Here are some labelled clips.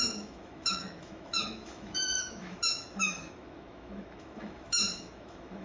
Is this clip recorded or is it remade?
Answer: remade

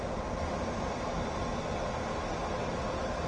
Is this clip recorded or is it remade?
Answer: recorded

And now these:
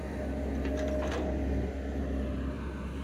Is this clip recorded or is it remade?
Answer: recorded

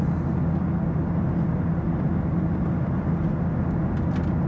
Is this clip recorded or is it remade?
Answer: recorded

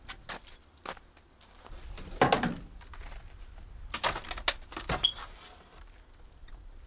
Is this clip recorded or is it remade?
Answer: recorded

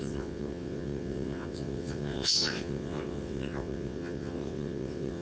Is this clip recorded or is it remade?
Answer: remade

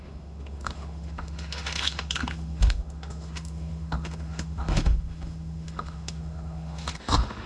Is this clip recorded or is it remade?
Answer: remade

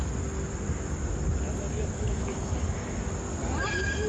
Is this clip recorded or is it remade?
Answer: recorded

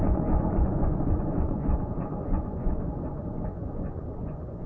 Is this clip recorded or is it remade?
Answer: remade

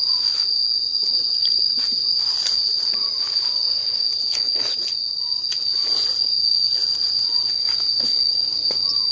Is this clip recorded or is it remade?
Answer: recorded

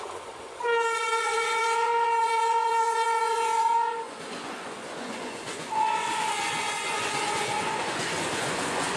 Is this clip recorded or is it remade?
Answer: remade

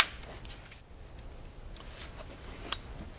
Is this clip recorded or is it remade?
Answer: recorded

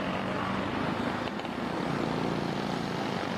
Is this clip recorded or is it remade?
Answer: recorded